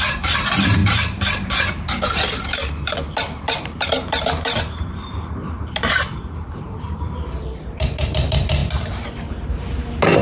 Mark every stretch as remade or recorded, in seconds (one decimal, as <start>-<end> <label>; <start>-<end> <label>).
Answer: 0.0-10.2 remade